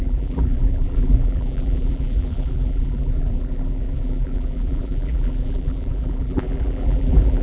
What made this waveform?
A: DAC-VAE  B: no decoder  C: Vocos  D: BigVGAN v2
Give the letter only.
D